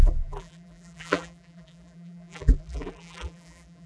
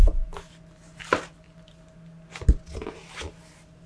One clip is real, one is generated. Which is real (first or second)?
second